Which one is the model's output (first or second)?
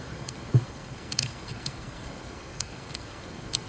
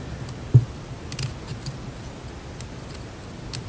first